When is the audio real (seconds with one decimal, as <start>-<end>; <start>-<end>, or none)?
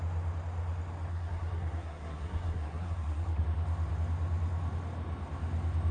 0.0-1.1; 3.4-5.9